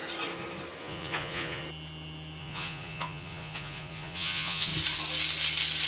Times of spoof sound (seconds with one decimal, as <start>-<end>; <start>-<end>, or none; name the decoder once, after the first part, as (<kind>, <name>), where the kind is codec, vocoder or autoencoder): 0.8-1.6 (vocoder, Vocos); 2.4-4.7